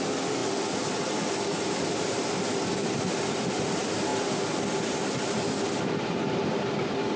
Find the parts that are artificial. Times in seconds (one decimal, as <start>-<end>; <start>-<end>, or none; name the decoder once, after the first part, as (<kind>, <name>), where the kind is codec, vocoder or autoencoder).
none